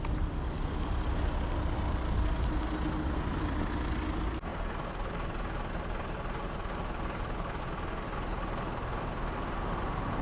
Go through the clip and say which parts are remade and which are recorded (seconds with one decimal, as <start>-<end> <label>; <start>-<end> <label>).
0.0-4.5 recorded; 4.5-7.6 remade; 7.6-10.2 recorded